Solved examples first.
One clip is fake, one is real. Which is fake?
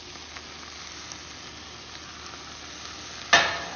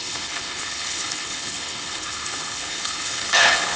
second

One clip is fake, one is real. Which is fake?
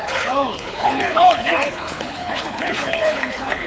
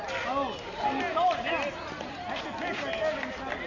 first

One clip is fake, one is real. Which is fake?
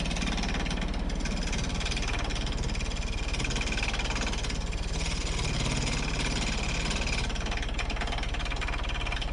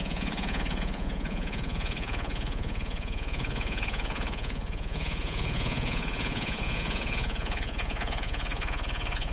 second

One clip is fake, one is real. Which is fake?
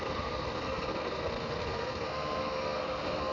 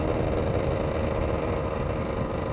first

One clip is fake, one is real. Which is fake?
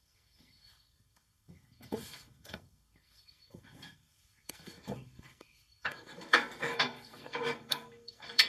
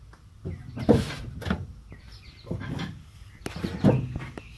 first